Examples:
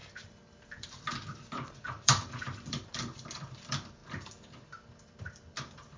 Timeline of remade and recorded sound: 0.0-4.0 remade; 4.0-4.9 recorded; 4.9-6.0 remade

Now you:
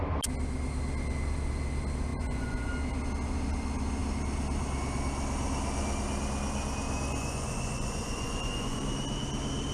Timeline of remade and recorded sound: 0.0-2.1 recorded; 2.1-2.7 remade; 2.7-7.1 recorded; 7.1-8.8 remade; 8.8-9.7 recorded

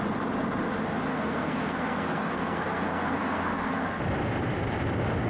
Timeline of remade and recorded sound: 0.0-1.1 recorded; 1.1-4.0 remade; 4.0-5.3 recorded

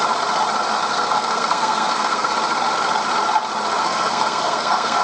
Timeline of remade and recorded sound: 0.0-0.9 recorded; 0.9-2.3 remade; 2.3-3.8 recorded; 3.8-5.0 remade

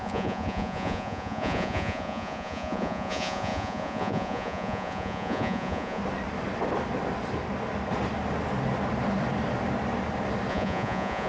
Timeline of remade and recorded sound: 0.0-6.0 remade; 6.0-10.5 recorded; 10.5-11.3 remade